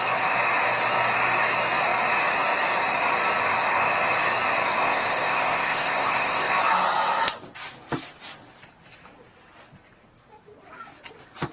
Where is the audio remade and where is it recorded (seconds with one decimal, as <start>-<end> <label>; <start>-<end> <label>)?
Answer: 0.0-4.8 recorded; 4.8-6.5 remade; 6.5-11.5 recorded